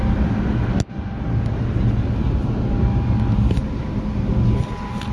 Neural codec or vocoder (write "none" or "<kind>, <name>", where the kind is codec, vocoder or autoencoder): none